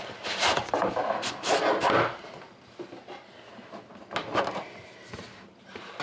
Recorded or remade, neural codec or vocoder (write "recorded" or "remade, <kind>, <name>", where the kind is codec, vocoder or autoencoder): recorded